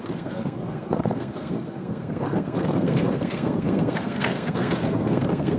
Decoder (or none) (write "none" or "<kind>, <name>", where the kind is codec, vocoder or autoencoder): codec, SNAC